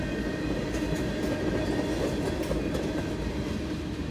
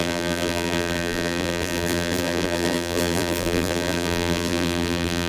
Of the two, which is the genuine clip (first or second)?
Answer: first